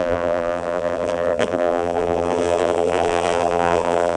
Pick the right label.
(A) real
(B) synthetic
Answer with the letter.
B